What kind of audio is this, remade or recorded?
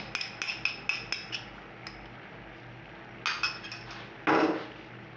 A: recorded